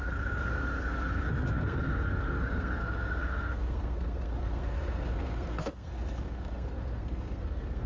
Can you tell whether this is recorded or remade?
remade